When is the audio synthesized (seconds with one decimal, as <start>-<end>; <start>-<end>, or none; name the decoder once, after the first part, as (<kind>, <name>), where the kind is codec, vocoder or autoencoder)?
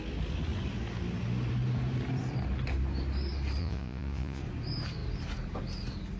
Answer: 3.6-4.4 (vocoder, Vocos)